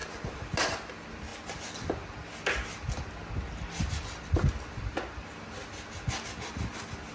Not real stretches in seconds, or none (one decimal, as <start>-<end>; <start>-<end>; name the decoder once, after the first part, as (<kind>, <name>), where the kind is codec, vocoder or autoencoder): none